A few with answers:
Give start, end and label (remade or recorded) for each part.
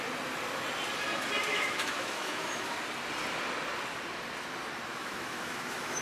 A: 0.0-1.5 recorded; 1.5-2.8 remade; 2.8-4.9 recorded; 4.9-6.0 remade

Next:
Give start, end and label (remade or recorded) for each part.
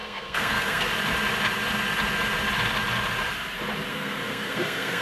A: 0.0-0.9 remade; 0.9-3.9 recorded; 3.9-5.0 remade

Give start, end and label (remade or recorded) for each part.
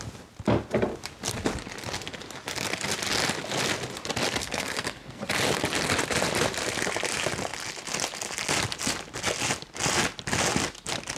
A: 0.0-4.4 recorded; 4.4-5.2 remade; 5.2-11.2 recorded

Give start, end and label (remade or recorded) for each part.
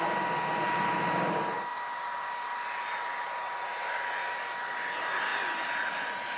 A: 0.0-6.4 recorded